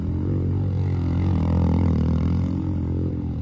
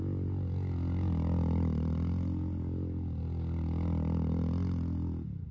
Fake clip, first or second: first